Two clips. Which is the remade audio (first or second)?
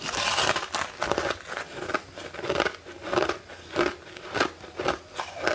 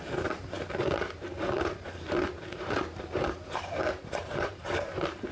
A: second